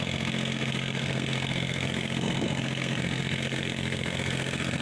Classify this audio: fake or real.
fake